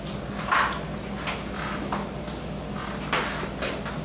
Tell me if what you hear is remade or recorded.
recorded